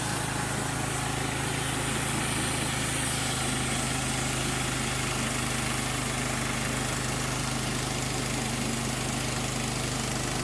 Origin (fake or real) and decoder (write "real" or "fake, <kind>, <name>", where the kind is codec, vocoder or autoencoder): real